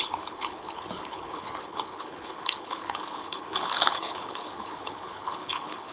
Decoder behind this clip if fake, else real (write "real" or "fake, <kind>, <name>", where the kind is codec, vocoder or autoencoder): fake, codec, HILCodec